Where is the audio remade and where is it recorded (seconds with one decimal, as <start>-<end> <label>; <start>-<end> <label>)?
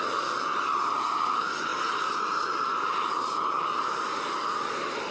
0.0-5.1 recorded